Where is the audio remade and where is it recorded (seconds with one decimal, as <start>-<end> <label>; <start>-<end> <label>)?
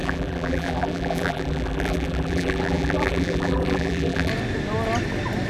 0.0-4.3 remade; 4.3-5.5 recorded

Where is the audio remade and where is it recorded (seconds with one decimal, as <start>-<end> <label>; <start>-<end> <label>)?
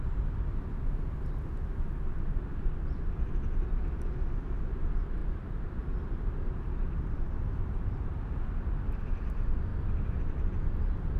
0.0-5.2 recorded; 5.2-9.0 remade; 9.0-11.2 recorded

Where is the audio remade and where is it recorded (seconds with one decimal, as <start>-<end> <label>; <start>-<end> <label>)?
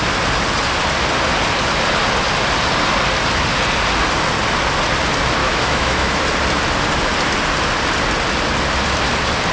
0.0-5.4 recorded; 5.4-6.2 remade; 6.2-9.5 recorded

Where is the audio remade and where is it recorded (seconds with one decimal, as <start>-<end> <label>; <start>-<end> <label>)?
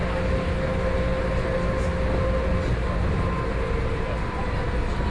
0.0-5.1 recorded